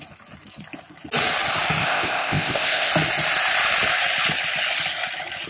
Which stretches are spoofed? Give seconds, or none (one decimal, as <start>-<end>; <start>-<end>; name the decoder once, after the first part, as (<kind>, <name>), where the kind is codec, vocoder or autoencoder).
1.8-2.9 (codec, ZipCodec)